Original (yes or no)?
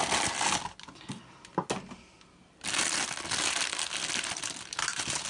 yes